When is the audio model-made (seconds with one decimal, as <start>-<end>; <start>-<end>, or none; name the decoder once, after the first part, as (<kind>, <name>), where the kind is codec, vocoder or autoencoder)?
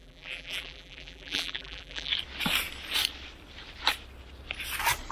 0.0-2.1 (vocoder, BigVGAN v2)